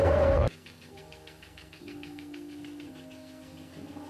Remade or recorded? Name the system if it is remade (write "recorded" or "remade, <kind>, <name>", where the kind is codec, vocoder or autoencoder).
remade, codec, SNAC